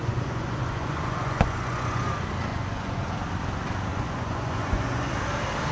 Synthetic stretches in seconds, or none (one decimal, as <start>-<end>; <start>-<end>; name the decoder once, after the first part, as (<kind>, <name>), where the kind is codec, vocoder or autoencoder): 0.0-2.1 (vocoder, Vocos); 2.5-3.1; 3.9-5.1

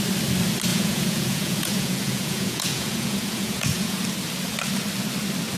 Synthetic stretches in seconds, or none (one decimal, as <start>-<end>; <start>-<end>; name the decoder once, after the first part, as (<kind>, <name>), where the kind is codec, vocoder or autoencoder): 0.7-4.0 (vocoder, Vocos)

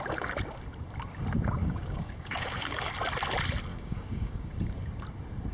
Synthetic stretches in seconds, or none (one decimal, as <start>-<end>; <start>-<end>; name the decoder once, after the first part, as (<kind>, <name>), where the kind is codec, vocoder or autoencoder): 1.6-2.9 (codec, DAC); 3.7-4.8

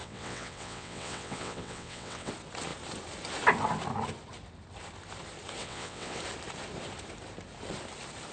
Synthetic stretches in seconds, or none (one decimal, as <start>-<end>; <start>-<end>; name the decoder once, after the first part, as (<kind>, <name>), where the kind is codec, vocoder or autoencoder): 0.0-2.3 (vocoder, WaveNeXt); 5.6-6.2

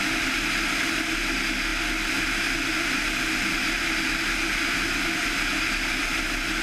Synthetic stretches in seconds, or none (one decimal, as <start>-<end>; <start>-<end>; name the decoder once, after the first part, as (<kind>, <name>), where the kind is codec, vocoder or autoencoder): none